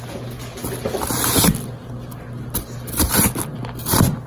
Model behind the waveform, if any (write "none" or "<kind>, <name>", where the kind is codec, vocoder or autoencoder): none